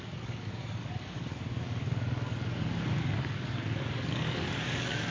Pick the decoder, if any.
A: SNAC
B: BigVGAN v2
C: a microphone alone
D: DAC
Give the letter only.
D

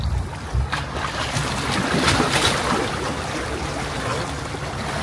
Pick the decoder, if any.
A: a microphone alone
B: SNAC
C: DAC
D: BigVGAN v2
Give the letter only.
A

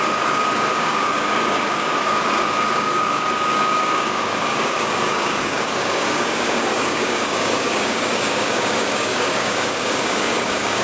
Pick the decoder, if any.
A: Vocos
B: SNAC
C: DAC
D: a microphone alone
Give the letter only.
C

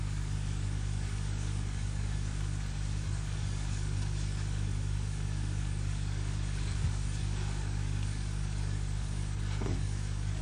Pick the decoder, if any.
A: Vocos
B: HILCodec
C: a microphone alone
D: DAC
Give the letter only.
D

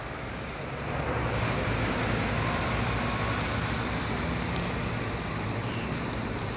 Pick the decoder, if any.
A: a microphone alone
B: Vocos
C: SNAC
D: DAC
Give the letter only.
A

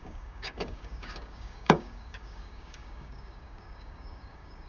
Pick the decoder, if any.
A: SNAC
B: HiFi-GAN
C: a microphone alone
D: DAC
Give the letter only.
D